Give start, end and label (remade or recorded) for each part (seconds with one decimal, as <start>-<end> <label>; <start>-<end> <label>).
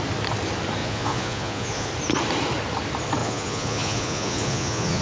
0.0-0.8 recorded; 0.8-1.9 remade; 1.9-3.2 recorded; 3.2-5.0 remade